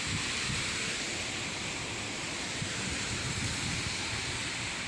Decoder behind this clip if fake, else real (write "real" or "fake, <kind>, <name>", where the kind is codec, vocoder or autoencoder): real